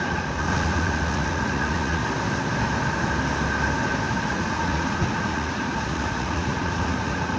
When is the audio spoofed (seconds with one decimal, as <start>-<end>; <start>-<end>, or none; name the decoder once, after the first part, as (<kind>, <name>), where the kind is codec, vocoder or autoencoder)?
0.0-2.0 (vocoder, Vocos); 4.3-7.4